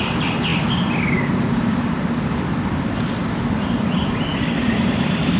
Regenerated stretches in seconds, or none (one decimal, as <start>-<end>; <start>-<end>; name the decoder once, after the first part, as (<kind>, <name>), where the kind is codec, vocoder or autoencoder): none

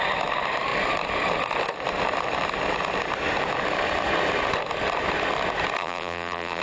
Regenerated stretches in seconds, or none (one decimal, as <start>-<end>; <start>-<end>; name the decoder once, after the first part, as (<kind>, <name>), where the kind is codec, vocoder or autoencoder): 5.8-6.6 (vocoder, BigVGAN v2)